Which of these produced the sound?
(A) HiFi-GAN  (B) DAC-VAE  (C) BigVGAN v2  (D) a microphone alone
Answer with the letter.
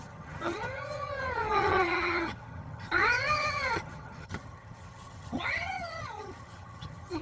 A